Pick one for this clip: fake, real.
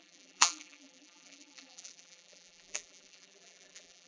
fake